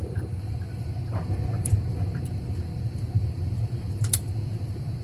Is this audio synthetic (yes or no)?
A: yes